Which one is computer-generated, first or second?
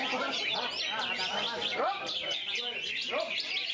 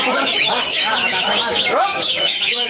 second